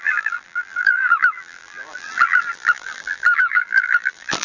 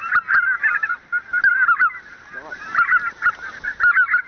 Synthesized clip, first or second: first